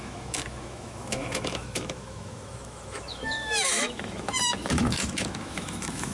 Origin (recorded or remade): remade